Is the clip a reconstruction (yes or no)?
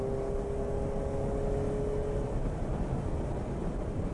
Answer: no